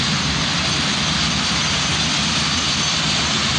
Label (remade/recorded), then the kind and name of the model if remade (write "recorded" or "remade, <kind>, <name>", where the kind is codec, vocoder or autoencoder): recorded